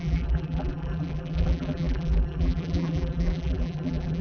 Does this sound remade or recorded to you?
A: remade